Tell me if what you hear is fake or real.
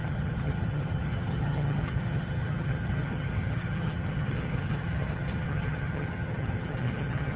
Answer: fake